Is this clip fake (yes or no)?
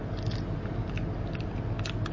no